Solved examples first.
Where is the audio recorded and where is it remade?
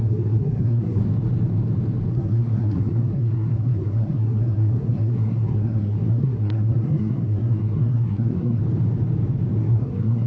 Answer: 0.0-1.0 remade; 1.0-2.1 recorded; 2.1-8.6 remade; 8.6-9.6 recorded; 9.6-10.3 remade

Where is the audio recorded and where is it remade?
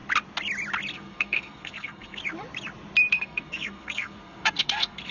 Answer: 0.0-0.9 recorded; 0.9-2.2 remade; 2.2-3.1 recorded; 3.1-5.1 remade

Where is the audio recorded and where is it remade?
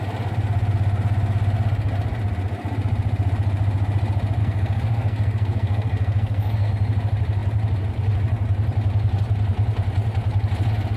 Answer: 0.0-4.4 recorded; 4.4-6.7 remade; 6.7-11.0 recorded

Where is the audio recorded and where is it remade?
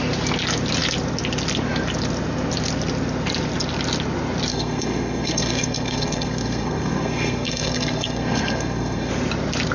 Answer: 0.0-4.5 recorded; 4.5-9.1 remade; 9.1-9.7 recorded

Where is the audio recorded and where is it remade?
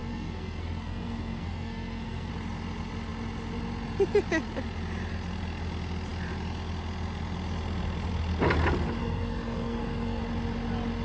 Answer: 0.0-2.3 remade; 2.3-9.0 recorded; 9.0-10.2 remade; 10.2-11.0 recorded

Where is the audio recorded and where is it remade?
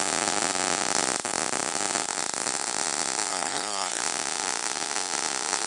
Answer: 0.0-3.3 recorded; 3.3-4.0 remade; 4.0-5.7 recorded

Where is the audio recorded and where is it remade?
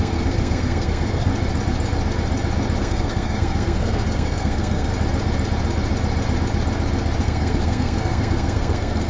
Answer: 0.0-1.3 remade; 1.3-2.8 recorded; 2.8-4.9 remade; 4.9-7.2 recorded; 7.2-9.1 remade